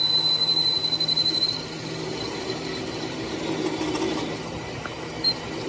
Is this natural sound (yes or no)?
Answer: yes